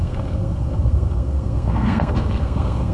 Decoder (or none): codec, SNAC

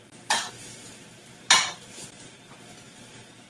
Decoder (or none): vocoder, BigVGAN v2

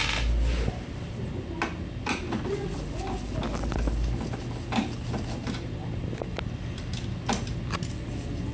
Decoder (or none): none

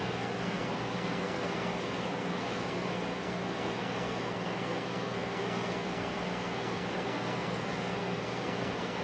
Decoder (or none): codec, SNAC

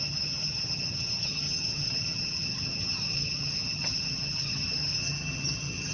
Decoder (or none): vocoder, HiFi-GAN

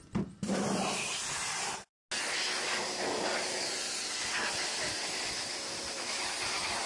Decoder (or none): none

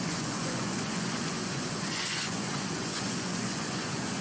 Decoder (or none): vocoder, Vocos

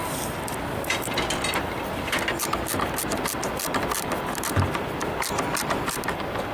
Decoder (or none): none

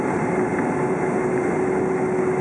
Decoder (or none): none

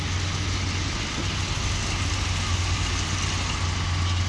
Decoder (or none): none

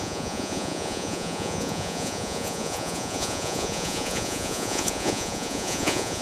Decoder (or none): vocoder, Vocos